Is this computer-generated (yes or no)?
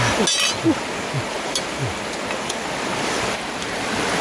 no